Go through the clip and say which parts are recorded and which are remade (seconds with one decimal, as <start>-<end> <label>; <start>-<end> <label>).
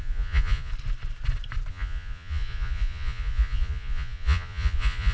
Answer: 0.0-0.7 remade; 0.7-1.7 recorded; 1.7-5.1 remade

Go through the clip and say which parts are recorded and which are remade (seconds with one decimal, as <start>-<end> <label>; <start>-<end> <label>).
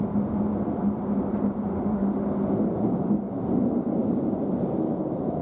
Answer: 0.0-1.7 recorded; 1.7-2.2 remade; 2.2-5.4 recorded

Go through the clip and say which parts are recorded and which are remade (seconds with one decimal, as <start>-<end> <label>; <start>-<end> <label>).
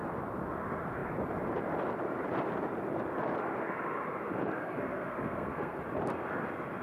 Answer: 0.0-4.6 recorded; 4.6-5.8 remade; 5.8-6.8 recorded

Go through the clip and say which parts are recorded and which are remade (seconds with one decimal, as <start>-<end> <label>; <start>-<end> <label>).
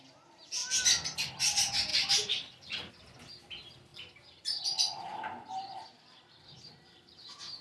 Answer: 0.0-1.9 recorded; 1.9-2.9 remade; 2.9-3.9 recorded; 3.9-6.7 remade; 6.7-7.6 recorded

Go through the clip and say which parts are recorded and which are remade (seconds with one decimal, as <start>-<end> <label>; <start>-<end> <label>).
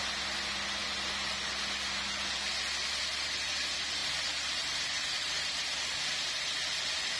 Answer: 0.0-4.0 recorded; 4.0-5.9 remade; 5.9-7.2 recorded